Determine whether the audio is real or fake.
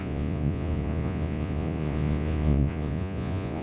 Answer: fake